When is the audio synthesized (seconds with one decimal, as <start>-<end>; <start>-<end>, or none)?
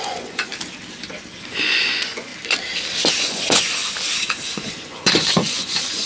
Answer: 0.0-0.5; 1.5-2.3; 3.2-3.8; 4.5-6.1